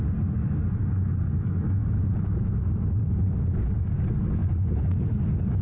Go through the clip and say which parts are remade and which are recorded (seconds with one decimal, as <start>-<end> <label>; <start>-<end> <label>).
0.0-1.8 recorded; 1.8-3.3 remade; 3.3-4.4 recorded; 4.4-5.1 remade; 5.1-5.6 recorded